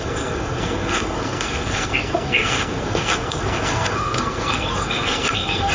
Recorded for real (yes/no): no